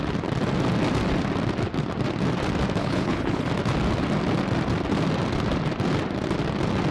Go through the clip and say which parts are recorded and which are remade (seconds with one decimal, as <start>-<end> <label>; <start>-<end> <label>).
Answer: 0.0-2.8 recorded; 2.8-3.5 remade; 3.5-6.9 recorded